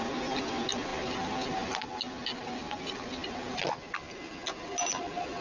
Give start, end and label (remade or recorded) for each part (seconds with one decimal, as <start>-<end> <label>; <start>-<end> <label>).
0.0-5.4 recorded